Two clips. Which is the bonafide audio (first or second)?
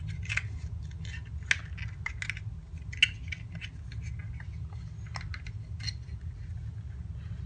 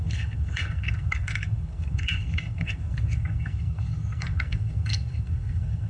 first